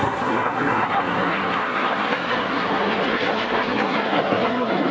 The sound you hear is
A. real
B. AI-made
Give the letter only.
B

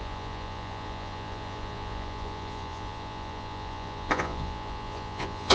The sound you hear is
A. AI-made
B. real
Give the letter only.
A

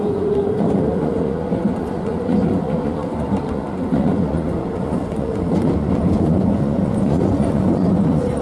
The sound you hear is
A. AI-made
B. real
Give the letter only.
A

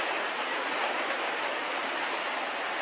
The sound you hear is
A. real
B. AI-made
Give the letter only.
A